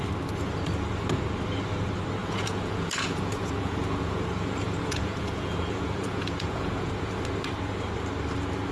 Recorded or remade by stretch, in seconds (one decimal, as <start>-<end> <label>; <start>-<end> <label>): 0.0-2.2 recorded; 2.2-7.2 remade; 7.2-8.7 recorded